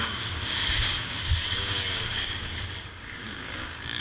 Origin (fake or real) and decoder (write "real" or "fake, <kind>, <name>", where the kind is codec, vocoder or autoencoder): fake, codec, DAC